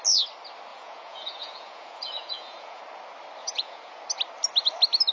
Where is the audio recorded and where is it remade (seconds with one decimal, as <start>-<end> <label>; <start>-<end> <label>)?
0.0-0.7 recorded; 0.7-2.8 remade; 2.8-3.4 recorded; 3.4-4.0 remade; 4.0-5.1 recorded